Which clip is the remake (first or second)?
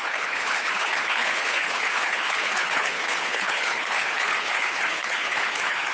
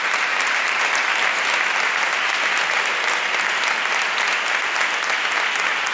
first